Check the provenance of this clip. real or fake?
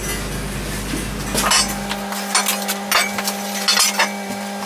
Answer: real